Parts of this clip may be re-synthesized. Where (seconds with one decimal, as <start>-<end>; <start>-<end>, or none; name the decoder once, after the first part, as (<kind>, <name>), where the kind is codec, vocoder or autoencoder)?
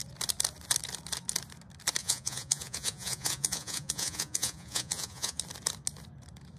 2.0-5.4 (vocoder, Vocos)